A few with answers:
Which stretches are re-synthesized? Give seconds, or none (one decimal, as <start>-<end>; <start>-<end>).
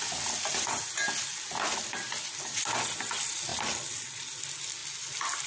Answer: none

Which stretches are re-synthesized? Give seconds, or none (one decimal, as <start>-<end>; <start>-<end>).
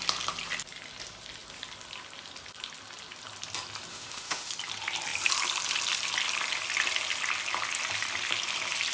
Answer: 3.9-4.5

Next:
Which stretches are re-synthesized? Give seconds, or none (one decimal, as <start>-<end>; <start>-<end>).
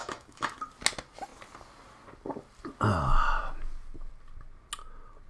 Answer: 0.0-0.6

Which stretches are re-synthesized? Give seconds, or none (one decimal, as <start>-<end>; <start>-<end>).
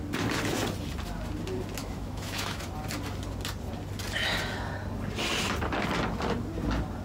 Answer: 1.8-2.7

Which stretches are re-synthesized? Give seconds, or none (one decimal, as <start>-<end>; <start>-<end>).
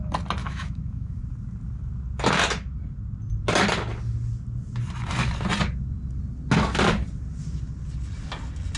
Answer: 0.4-1.2